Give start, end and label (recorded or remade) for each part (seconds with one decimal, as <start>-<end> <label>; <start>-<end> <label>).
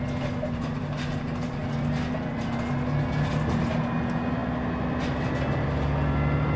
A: 0.0-6.6 recorded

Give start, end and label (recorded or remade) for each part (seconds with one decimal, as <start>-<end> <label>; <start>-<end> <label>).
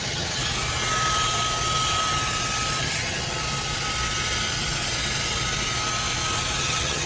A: 0.0-0.4 remade; 0.4-2.8 recorded; 2.8-3.4 remade; 3.4-6.6 recorded; 6.6-7.1 remade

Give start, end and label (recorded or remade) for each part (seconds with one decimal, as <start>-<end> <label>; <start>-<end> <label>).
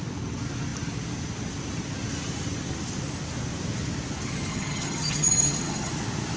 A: 0.0-4.5 recorded; 4.5-5.9 remade; 5.9-6.4 recorded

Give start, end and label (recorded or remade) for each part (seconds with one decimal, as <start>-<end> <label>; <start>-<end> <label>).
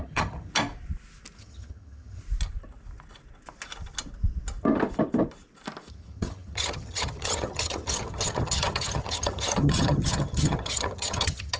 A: 0.0-0.5 remade; 0.5-1.4 recorded; 1.4-2.2 remade; 2.2-5.9 recorded; 5.9-11.6 remade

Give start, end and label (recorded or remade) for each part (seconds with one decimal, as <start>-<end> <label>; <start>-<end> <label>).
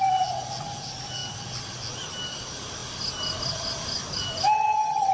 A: 0.0-4.5 recorded; 4.5-5.1 remade